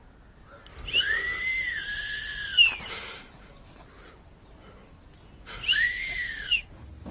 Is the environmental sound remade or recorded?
recorded